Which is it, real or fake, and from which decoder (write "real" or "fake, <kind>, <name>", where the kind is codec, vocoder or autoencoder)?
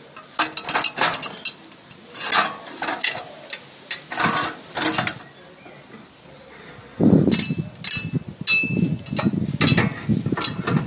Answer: real